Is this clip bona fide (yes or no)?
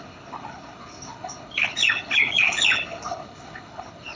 no